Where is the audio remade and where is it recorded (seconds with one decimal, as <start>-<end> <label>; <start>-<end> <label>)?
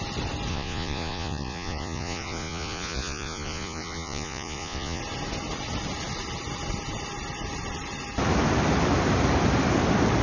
0.0-0.5 recorded; 0.5-5.0 remade; 5.0-10.2 recorded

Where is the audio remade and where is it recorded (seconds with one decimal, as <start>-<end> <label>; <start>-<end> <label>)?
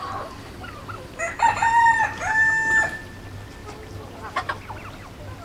0.0-1.6 recorded; 1.6-2.2 remade; 2.2-5.4 recorded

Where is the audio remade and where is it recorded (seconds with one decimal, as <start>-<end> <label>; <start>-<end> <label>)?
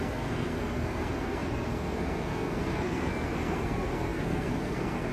0.0-5.1 remade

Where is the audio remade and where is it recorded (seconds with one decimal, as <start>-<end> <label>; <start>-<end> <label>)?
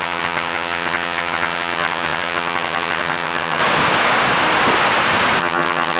0.0-3.6 remade; 3.6-5.4 recorded; 5.4-6.0 remade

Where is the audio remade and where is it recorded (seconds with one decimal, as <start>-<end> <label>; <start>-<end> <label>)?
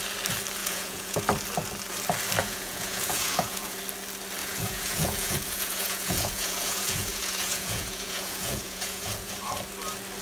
0.0-0.6 recorded; 0.6-1.2 remade; 1.2-2.4 recorded; 2.4-3.8 remade; 3.8-4.4 recorded; 4.4-9.3 remade; 9.3-10.2 recorded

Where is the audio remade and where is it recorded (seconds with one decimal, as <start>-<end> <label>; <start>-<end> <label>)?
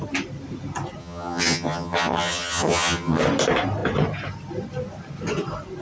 0.0-1.0 recorded; 1.0-3.2 remade; 3.2-5.8 recorded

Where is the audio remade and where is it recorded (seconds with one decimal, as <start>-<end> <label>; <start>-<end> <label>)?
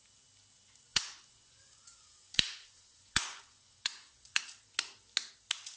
0.0-0.9 recorded; 0.9-4.4 remade; 4.4-5.8 recorded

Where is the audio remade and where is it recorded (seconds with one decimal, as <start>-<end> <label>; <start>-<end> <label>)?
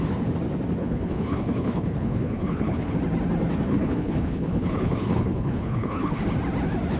0.0-0.8 recorded; 0.8-2.9 remade; 2.9-3.7 recorded; 3.7-6.2 remade; 6.2-7.0 recorded